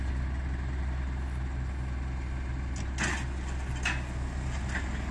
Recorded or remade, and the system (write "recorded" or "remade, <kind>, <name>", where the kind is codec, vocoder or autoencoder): recorded